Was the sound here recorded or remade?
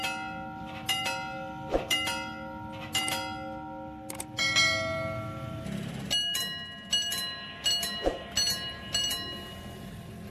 recorded